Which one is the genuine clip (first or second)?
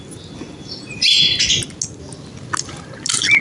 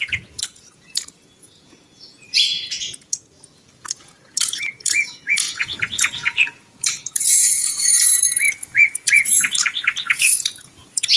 first